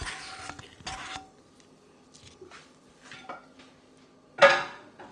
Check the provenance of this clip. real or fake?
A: real